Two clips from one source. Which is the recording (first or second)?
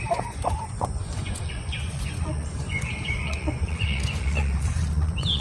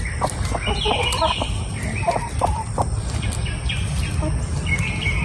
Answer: second